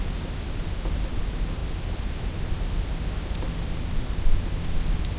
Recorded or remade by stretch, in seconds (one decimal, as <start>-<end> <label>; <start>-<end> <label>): 0.0-5.2 recorded